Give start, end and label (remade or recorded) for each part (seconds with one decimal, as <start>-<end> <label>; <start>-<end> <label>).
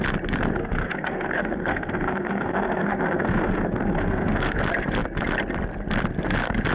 0.0-0.6 recorded; 0.6-4.6 remade; 4.6-6.7 recorded